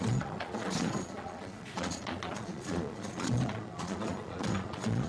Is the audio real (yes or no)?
no